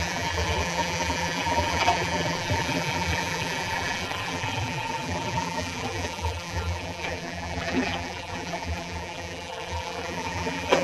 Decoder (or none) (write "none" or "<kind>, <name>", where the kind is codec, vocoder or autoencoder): vocoder, BigVGAN v2